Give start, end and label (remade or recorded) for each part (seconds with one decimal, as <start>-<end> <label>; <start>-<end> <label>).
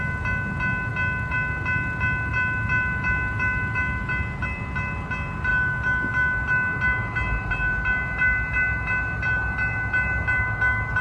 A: 0.0-11.0 recorded